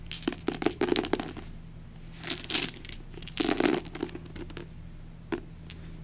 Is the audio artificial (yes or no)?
no